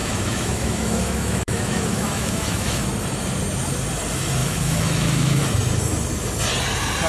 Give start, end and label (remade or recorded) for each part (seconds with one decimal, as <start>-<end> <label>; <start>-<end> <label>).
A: 0.0-2.8 remade; 2.8-4.4 recorded; 4.4-5.4 remade; 5.4-7.1 recorded

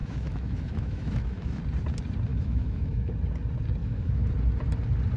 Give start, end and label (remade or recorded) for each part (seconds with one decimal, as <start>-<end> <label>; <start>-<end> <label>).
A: 0.0-1.6 remade; 1.6-2.3 recorded; 2.3-3.1 remade; 3.1-3.8 recorded; 3.8-4.3 remade; 4.3-5.2 recorded

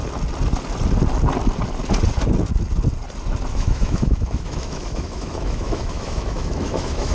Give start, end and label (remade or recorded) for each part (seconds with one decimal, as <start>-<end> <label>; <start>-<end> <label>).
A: 0.0-3.5 recorded; 3.5-7.1 remade

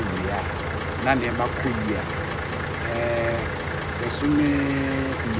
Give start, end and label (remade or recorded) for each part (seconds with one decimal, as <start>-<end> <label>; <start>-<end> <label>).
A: 0.0-4.5 recorded; 4.5-5.4 remade

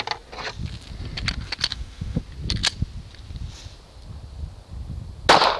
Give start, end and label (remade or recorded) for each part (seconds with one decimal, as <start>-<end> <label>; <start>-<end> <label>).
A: 0.0-1.7 recorded; 1.7-2.2 remade; 2.2-5.6 recorded

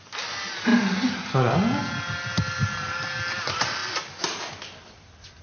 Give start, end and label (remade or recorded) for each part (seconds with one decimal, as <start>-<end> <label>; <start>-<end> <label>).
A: 0.0-5.4 recorded

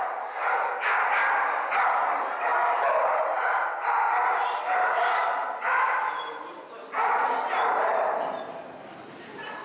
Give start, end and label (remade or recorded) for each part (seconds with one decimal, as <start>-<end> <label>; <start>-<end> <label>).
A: 0.0-9.6 recorded

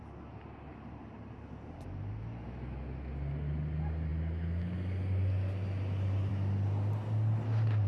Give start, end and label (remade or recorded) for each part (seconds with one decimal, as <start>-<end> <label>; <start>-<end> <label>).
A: 0.0-7.9 recorded